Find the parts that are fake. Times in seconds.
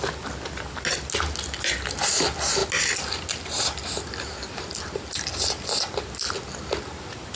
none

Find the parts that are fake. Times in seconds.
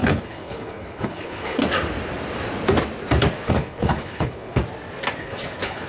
0.0-1.6 (codec, HILCodec); 3.5-4.6; 5.2-5.9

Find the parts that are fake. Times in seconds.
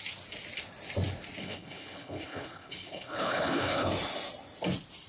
1.4-3.9 (codec, HILCodec)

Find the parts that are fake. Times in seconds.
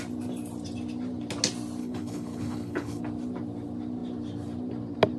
1.8-3.0 (codec, HILCodec)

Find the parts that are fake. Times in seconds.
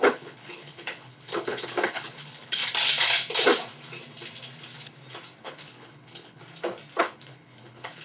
0.0-2.6 (codec, HILCodec); 5.4-6.4; 7.0-8.0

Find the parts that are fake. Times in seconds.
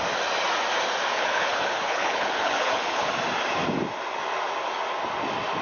1.1-3.1 (codec, HILCodec)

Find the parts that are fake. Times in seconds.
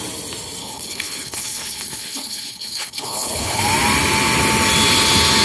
0.6-3.6 (codec, HILCodec)